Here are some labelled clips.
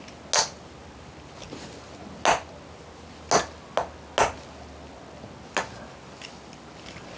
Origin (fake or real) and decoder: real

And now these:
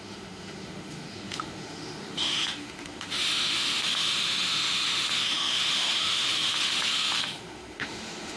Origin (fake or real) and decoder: fake, autoencoder, DAC-VAE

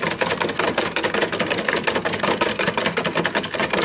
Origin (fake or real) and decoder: real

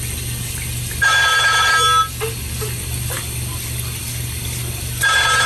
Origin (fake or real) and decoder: real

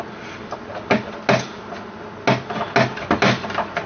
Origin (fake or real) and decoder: real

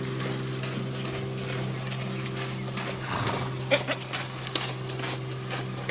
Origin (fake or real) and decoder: real